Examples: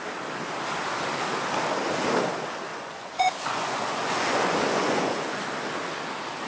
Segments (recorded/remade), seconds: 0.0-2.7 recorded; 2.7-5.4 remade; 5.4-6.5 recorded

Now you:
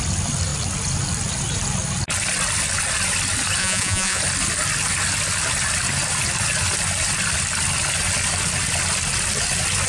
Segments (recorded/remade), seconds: 0.0-3.6 recorded; 3.6-4.2 remade; 4.2-9.9 recorded

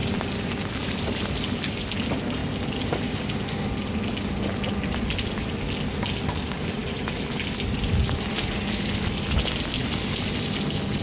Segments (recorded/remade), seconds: 0.0-11.0 recorded

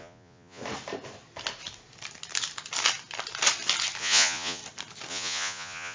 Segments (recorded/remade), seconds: 0.0-0.6 remade; 0.6-4.0 recorded; 4.0-4.6 remade; 4.6-5.1 recorded; 5.1-5.9 remade

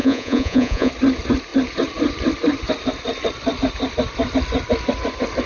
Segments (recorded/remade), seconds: 0.0-0.9 remade; 0.9-5.5 recorded

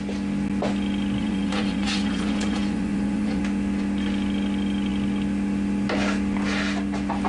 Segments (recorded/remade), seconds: 0.0-1.2 recorded; 1.2-3.4 remade; 3.4-7.3 recorded

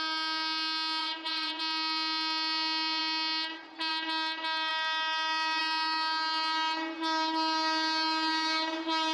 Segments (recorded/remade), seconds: 0.0-1.0 recorded; 1.0-1.6 remade; 1.6-9.1 recorded

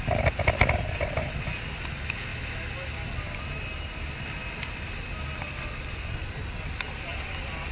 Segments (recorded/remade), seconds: 0.0-7.7 recorded